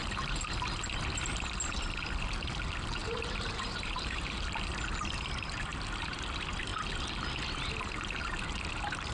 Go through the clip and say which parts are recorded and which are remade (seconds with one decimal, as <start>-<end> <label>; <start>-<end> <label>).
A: 0.0-3.0 recorded; 3.0-4.7 remade; 4.7-5.7 recorded; 5.7-6.2 remade; 6.2-9.1 recorded